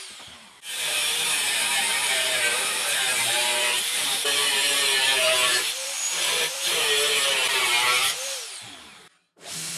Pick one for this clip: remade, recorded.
remade